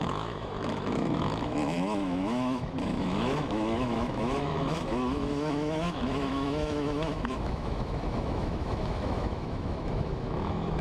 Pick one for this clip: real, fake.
fake